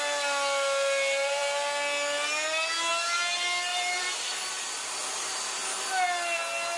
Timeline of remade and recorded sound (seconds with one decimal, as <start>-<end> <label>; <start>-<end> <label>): 0.0-3.7 recorded; 3.7-4.3 remade; 4.3-6.8 recorded